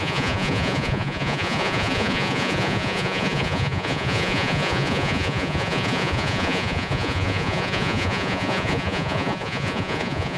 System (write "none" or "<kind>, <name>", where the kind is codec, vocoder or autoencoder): vocoder, Vocos